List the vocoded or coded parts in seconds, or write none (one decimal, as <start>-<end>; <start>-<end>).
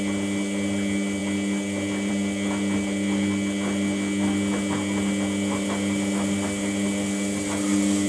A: none